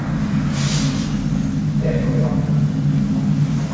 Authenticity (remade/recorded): recorded